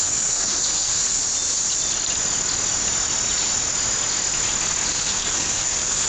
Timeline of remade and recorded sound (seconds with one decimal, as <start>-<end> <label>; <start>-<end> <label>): 0.0-1.2 remade; 1.2-4.9 recorded; 4.9-6.1 remade